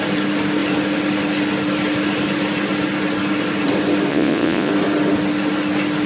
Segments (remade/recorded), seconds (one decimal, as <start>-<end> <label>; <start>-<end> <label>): 0.0-4.1 recorded; 4.1-4.7 remade; 4.7-6.1 recorded